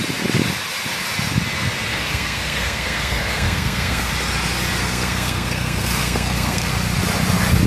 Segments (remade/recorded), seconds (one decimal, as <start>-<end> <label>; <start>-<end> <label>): 0.0-1.9 recorded; 1.9-4.1 remade; 4.1-4.8 recorded; 4.8-6.7 remade; 6.7-7.7 recorded